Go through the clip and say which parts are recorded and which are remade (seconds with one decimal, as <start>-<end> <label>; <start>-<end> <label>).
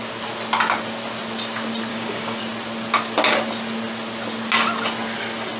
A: 0.0-1.9 recorded; 1.9-2.4 remade; 2.4-5.6 recorded